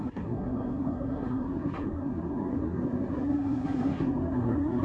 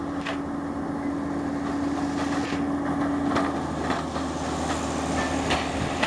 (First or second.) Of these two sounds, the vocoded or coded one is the first